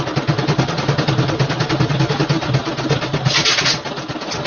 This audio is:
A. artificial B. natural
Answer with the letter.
B